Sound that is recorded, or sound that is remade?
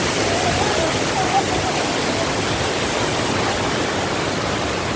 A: recorded